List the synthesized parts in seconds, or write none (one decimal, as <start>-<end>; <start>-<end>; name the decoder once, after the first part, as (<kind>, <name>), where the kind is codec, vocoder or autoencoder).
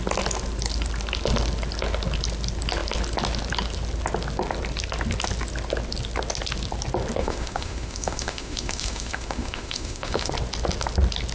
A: 7.2-10.3 (autoencoder, DAC-VAE)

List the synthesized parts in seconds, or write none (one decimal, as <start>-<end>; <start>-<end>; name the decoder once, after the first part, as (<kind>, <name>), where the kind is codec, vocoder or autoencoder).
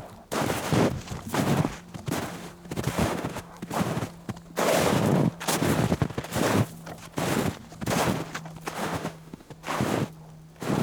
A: 3.0-3.5 (autoencoder, DAC-VAE); 8.8-9.5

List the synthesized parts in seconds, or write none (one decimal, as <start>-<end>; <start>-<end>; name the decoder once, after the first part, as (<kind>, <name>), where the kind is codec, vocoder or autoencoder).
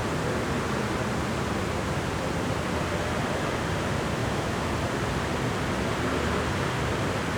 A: 4.2-4.7 (autoencoder, DAC-VAE)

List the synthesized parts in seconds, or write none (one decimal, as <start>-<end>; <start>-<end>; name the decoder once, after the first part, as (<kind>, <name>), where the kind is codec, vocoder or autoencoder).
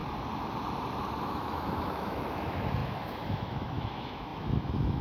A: 1.2-5.0 (autoencoder, DAC-VAE)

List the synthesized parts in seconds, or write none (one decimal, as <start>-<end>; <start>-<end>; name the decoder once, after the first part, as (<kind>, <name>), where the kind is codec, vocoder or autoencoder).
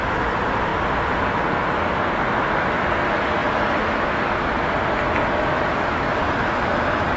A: 5.2-6.1 (autoencoder, DAC-VAE)